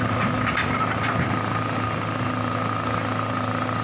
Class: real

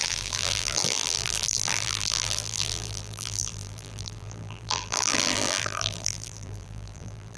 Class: fake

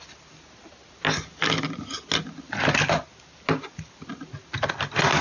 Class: real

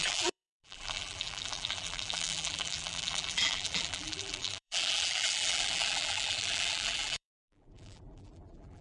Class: fake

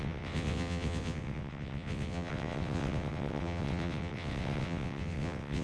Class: fake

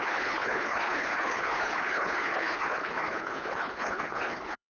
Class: fake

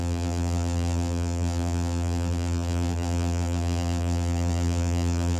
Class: fake